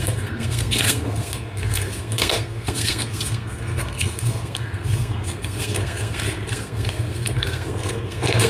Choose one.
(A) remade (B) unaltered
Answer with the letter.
A